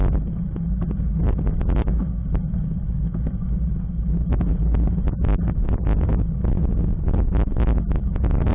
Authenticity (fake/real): real